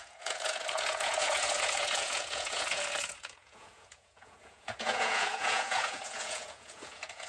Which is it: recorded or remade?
remade